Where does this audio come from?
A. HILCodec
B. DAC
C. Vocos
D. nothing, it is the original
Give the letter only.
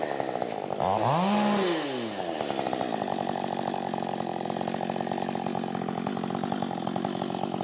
D